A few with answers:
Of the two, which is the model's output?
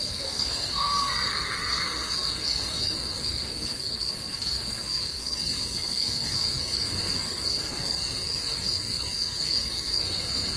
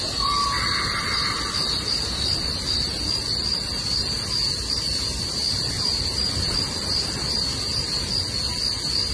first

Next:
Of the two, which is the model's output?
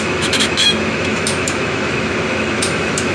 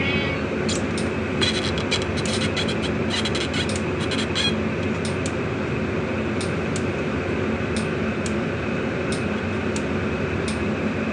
first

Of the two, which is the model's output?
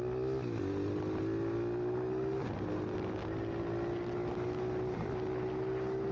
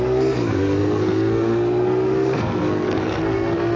second